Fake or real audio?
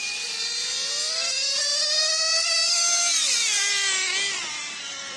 real